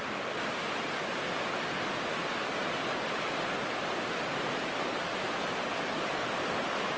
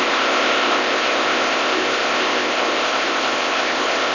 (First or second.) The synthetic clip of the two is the second